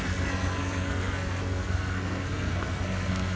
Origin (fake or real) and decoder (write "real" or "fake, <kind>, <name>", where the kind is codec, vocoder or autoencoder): fake, codec, SNAC